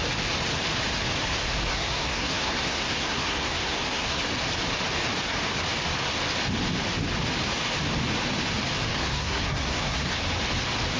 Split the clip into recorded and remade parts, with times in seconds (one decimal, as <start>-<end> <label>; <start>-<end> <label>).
0.0-1.7 recorded; 1.7-4.2 remade; 4.2-9.0 recorded; 9.0-10.2 remade; 10.2-11.0 recorded